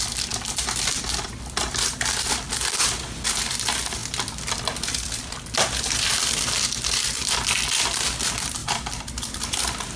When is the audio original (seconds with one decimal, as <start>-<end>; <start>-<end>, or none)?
0.0-8.6; 9.1-10.0